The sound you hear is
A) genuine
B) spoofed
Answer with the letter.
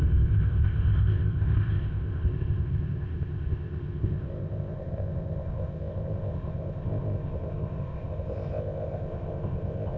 B